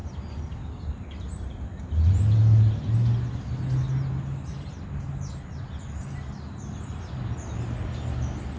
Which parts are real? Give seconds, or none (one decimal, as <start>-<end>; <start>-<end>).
0.0-8.6